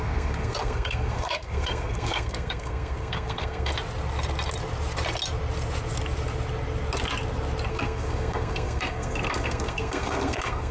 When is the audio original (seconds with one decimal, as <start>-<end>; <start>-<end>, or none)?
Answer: 3.7-7.7